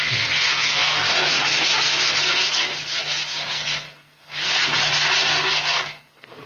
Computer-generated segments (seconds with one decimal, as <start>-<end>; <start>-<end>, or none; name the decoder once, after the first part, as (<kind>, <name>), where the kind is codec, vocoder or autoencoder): 0.0-4.6 (codec, SNAC); 5.2-6.5